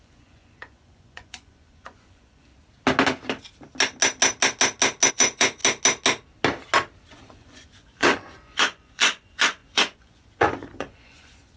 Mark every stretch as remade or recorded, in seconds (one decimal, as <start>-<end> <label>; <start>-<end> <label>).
0.0-2.5 remade; 2.5-5.1 recorded; 5.1-5.6 remade; 5.6-7.1 recorded; 7.1-11.6 remade